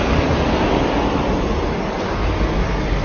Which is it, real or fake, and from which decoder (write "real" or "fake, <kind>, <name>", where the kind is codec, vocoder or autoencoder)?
real